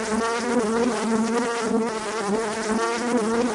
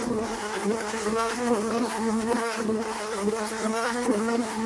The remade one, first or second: second